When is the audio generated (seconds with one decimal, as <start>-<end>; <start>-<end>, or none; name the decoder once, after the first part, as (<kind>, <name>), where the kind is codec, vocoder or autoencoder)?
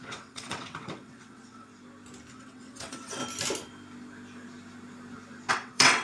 0.0-1.7 (vocoder, WaveNeXt); 2.3-3.2; 5.5-6.0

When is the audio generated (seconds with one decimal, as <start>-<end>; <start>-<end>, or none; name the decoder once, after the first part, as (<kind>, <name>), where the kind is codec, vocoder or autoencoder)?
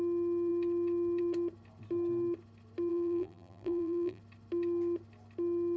2.9-4.2 (vocoder, BigVGAN v2)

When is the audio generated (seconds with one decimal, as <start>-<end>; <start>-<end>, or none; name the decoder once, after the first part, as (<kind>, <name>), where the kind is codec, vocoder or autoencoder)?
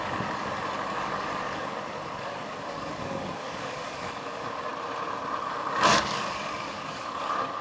0.0-4.7 (codec, DAC); 5.4-7.6